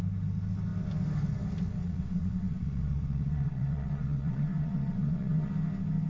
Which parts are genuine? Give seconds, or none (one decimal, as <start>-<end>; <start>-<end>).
0.0-1.8; 5.5-6.1